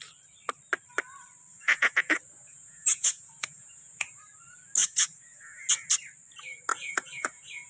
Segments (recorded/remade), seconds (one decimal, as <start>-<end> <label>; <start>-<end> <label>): 0.0-1.5 recorded; 1.5-4.2 remade; 4.2-4.8 recorded; 4.8-5.7 remade; 5.7-6.7 recorded; 6.7-7.7 remade